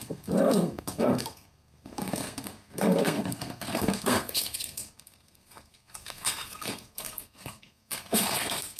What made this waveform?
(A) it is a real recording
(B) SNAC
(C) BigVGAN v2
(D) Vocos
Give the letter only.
B